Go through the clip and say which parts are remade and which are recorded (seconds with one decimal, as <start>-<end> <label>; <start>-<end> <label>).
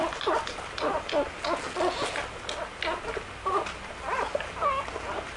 0.0-5.4 recorded